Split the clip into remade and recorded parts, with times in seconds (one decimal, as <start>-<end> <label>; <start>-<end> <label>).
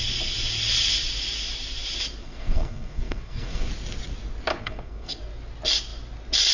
0.0-2.2 recorded; 2.2-3.7 remade; 3.7-4.5 recorded; 4.5-5.2 remade; 5.2-6.5 recorded